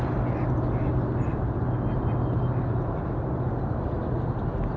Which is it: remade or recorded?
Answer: recorded